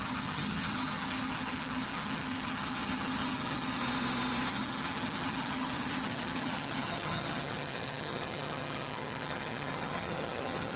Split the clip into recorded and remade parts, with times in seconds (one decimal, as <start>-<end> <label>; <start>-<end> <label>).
0.0-3.8 remade; 3.8-4.5 recorded; 4.5-10.8 remade